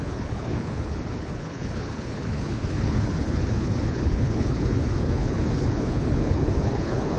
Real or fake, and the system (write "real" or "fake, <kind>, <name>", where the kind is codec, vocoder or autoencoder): fake, codec, HILCodec